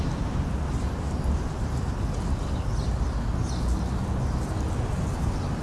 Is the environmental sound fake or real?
real